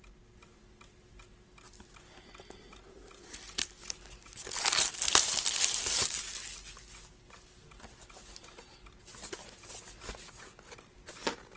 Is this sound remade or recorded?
recorded